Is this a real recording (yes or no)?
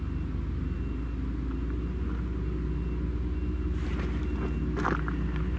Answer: yes